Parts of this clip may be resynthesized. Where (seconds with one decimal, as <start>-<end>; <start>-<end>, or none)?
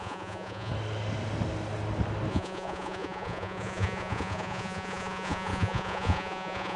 0.0-0.7; 2.3-6.8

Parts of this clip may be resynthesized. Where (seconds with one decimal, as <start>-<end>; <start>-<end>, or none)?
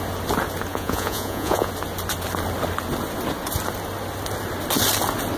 0.7-1.7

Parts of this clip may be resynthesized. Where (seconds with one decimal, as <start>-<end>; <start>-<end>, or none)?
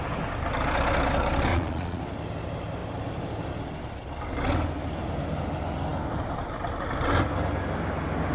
1.5-2.0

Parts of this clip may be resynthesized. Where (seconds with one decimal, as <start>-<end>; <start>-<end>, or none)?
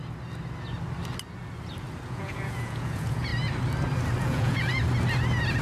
2.1-3.3; 4.2-4.8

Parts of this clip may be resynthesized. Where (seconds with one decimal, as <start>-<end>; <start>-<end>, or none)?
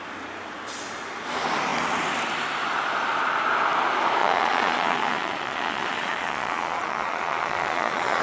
4.2-8.2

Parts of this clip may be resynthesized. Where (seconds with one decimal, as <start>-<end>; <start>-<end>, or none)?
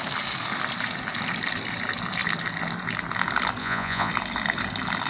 3.6-4.1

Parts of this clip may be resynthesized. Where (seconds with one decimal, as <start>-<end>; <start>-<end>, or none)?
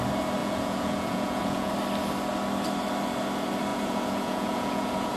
0.4-1.7; 3.7-5.2